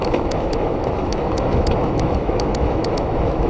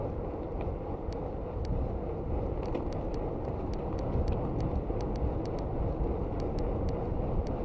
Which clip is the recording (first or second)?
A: second